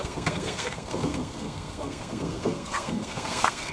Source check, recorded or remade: remade